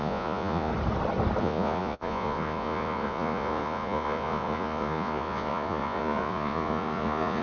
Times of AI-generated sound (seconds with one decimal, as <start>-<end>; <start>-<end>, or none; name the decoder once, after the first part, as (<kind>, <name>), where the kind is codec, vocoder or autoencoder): 0.0-0.7 (vocoder, Vocos); 1.4-7.4